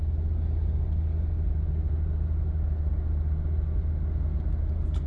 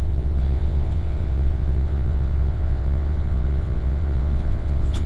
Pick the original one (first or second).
first